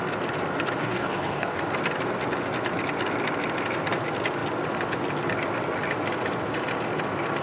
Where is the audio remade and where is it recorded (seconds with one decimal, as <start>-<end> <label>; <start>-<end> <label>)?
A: 0.0-0.8 recorded; 0.8-1.6 remade; 1.6-7.4 recorded